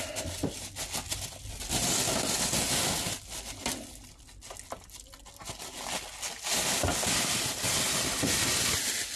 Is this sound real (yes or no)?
yes